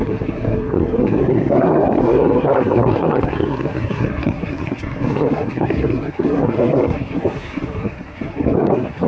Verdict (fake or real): fake